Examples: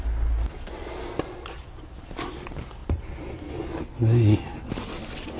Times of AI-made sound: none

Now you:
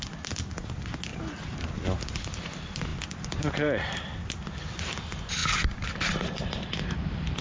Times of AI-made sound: 1.1-1.7 (vocoder, BigVGAN v2)

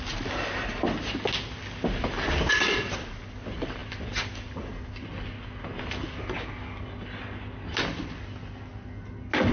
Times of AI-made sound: none

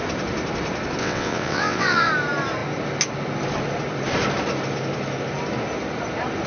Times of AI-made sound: 1.0-2.1 (vocoder, WaveNeXt)

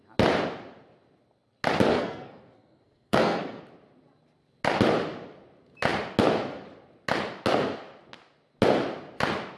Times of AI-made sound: 1.9-3.6 (codec, SNAC)

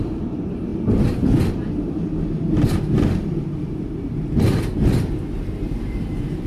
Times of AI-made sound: 0.0-0.7 (vocoder, BigVGAN v2); 4.6-6.5